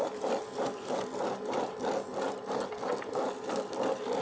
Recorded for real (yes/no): yes